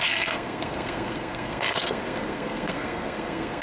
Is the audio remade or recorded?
remade